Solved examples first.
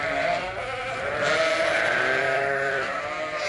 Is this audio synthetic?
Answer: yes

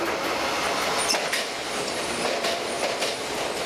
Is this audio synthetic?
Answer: no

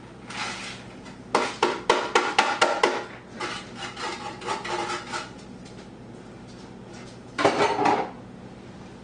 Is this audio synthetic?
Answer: no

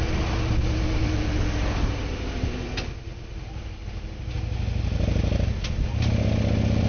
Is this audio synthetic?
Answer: no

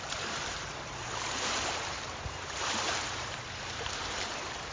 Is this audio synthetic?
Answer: yes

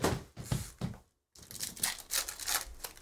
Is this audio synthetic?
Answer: no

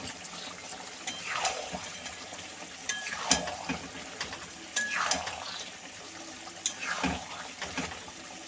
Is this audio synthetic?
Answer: yes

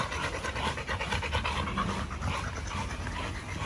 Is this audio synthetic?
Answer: no